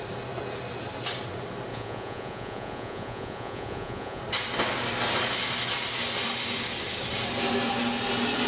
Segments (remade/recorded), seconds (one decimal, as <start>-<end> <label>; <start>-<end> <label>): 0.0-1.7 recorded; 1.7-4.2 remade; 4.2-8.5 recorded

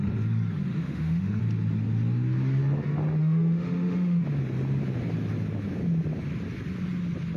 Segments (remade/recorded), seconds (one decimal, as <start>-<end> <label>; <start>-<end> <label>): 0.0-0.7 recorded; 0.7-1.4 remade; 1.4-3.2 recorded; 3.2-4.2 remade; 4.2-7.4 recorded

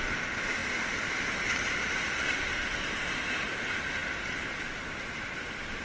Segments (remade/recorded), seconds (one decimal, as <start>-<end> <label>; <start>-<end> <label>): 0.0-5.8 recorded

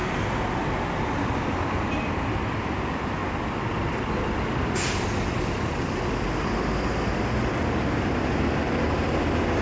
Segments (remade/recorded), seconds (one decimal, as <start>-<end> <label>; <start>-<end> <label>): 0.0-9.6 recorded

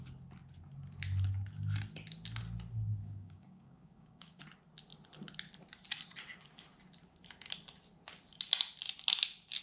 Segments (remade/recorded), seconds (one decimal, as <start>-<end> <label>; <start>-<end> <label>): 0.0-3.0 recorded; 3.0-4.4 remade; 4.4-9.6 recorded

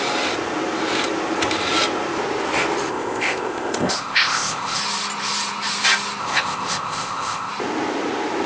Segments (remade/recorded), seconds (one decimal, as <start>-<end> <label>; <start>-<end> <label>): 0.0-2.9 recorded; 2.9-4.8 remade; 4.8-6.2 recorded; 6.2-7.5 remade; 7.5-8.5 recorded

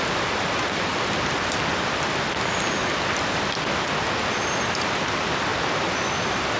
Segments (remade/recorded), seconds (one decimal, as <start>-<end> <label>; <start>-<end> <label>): 0.0-0.9 recorded; 0.9-3.4 remade; 3.4-5.5 recorded; 5.5-6.1 remade; 6.1-6.6 recorded

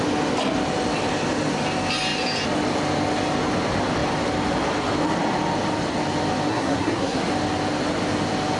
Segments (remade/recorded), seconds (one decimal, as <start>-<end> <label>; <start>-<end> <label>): 0.0-6.5 recorded; 6.5-7.3 remade; 7.3-8.6 recorded